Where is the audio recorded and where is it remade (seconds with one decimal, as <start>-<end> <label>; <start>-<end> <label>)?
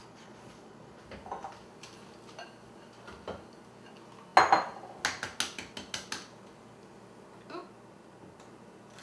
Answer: 0.0-1.0 remade; 1.0-9.0 recorded